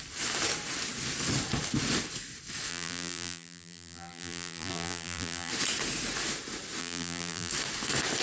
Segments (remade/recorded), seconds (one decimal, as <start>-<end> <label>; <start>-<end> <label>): 0.0-2.7 recorded; 2.7-5.5 remade; 5.5-6.8 recorded; 6.8-7.5 remade; 7.5-8.2 recorded